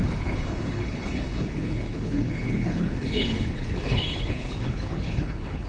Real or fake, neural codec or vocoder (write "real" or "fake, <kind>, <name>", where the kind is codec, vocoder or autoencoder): fake, codec, HILCodec